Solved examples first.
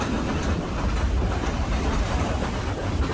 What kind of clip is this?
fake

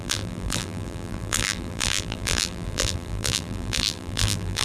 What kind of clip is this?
fake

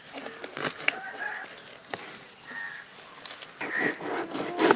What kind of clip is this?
real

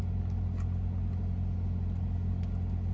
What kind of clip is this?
real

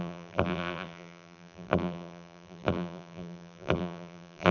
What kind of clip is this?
fake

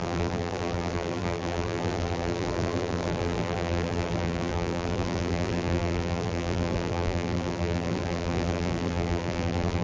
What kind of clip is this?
fake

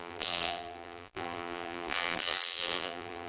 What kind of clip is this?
fake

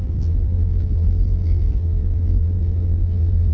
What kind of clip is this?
fake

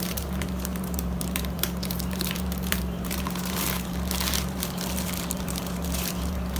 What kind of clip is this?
fake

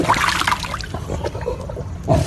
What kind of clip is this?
real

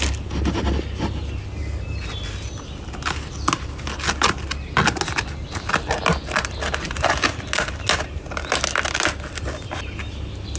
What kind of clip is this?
real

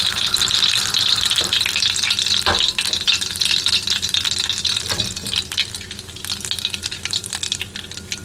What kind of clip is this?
real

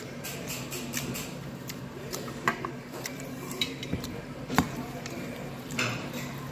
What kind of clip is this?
fake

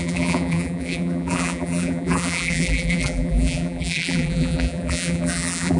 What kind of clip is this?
fake